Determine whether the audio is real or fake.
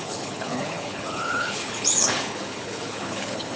fake